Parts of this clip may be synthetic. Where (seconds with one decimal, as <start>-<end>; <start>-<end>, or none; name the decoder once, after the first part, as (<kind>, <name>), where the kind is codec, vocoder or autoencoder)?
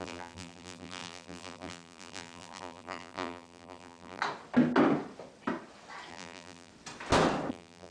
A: 0.0-4.2 (vocoder, BigVGAN v2); 6.1-6.7; 7.5-7.9